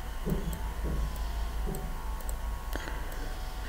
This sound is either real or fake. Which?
real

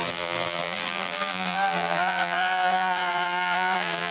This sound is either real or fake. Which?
fake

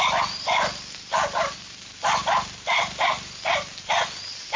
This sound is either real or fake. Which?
fake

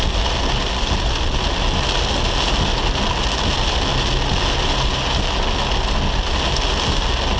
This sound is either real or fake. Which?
real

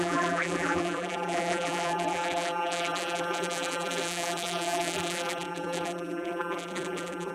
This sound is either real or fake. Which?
fake